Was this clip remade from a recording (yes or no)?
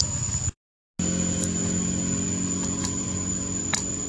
no